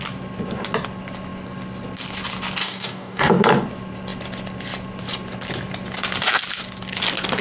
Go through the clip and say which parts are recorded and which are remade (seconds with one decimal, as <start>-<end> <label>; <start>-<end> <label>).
0.0-2.6 recorded; 2.6-3.3 remade; 3.3-7.4 recorded